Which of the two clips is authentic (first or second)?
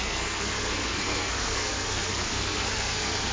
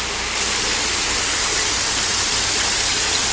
second